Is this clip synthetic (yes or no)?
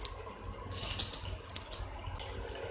no